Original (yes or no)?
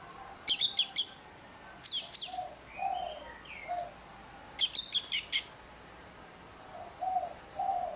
yes